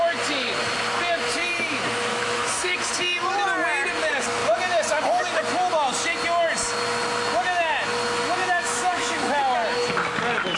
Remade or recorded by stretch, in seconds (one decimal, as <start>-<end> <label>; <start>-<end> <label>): 0.0-2.1 recorded; 2.1-2.9 remade; 2.9-8.4 recorded; 8.4-9.4 remade; 9.4-10.6 recorded